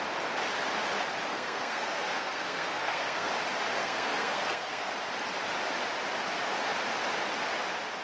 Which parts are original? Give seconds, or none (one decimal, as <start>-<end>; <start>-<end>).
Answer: 0.0-1.3; 3.3-3.8; 4.9-8.0

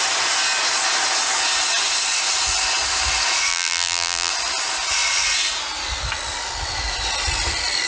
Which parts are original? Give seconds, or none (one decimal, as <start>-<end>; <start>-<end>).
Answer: 0.0-3.5; 4.3-7.9

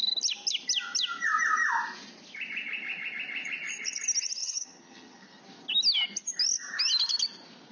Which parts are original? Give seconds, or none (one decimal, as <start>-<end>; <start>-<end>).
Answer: 0.0-4.4; 5.4-7.7

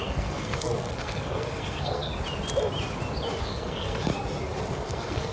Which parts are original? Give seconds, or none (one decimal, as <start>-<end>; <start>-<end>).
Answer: 2.1-3.4; 4.1-4.7

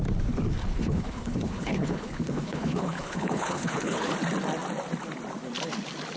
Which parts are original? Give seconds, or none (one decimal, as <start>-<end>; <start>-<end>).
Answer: 0.0-0.6; 4.1-6.2

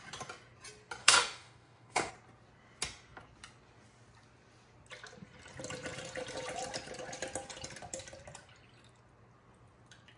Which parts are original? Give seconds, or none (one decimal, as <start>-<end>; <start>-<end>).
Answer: 0.0-1.0; 2.1-10.2